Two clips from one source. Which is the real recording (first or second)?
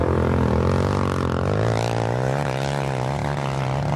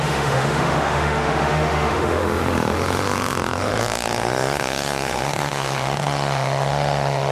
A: first